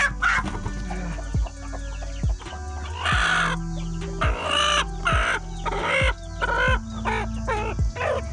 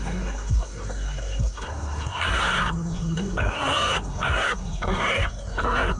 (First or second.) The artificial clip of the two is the second